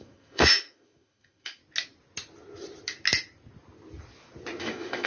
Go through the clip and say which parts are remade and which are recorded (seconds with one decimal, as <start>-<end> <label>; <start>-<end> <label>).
0.0-1.6 remade; 1.6-4.6 recorded; 4.6-5.1 remade